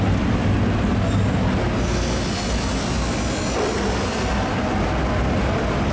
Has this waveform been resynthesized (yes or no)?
no